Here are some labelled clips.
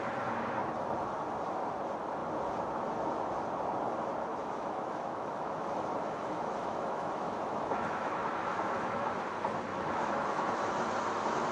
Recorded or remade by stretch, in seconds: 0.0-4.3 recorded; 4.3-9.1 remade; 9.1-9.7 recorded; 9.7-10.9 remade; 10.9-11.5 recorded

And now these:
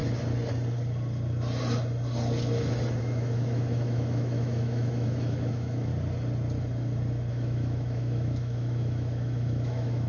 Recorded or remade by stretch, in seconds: 0.0-3.0 recorded; 3.0-5.9 remade; 5.9-7.3 recorded; 7.3-10.1 remade

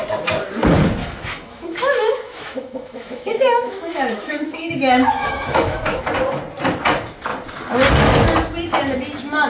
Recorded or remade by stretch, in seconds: 0.0-1.0 recorded; 1.0-6.0 remade; 6.0-9.5 recorded

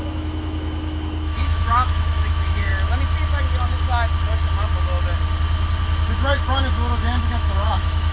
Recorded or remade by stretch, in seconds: 0.0-2.7 remade; 2.7-7.0 recorded; 7.0-8.1 remade

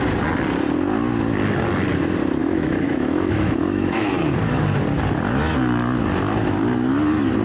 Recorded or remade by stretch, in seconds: 0.0-2.4 recorded; 2.4-4.1 remade; 4.1-7.4 recorded

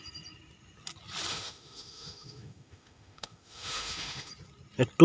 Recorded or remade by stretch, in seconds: 0.0-1.3 recorded; 1.3-4.3 remade; 4.3-5.0 recorded

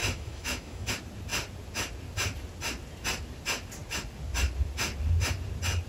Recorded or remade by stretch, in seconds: 0.0-0.9 remade; 0.9-5.9 recorded